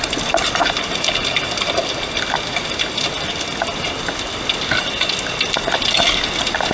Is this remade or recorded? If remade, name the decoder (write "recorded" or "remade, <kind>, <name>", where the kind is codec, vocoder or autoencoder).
recorded